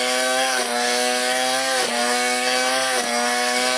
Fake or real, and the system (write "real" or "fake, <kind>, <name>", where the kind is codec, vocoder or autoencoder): fake, codec, SNAC